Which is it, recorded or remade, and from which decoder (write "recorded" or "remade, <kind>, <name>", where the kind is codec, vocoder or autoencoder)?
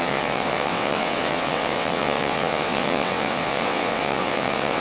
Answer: remade, vocoder, WaveNeXt